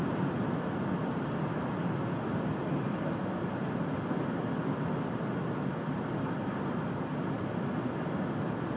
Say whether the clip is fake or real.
real